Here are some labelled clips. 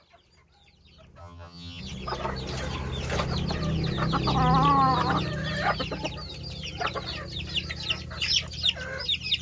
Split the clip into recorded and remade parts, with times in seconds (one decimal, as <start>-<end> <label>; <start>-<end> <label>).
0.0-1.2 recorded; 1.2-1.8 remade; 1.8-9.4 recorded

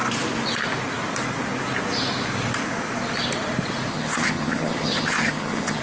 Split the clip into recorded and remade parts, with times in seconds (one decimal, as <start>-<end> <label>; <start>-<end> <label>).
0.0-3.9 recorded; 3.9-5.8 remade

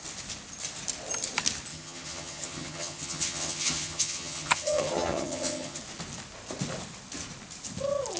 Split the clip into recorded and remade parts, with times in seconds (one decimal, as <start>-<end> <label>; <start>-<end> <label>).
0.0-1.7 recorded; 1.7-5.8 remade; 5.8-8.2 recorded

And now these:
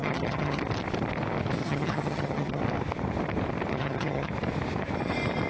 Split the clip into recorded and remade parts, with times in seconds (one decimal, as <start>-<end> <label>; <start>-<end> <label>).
0.0-0.6 remade; 0.6-1.6 recorded; 1.6-2.6 remade; 2.6-3.7 recorded; 3.7-4.3 remade; 4.3-5.5 recorded